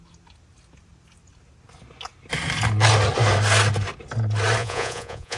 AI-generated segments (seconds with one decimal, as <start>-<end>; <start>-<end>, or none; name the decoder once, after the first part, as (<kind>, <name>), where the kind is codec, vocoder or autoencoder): 4.6-5.4 (vocoder, Vocos)